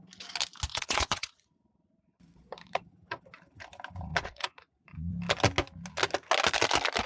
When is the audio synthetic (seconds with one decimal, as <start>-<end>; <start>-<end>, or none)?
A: 0.7-2.9; 4.1-5.1